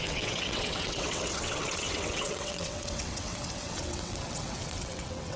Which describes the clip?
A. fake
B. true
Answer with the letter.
A